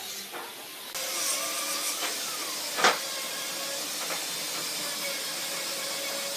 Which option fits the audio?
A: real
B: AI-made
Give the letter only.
A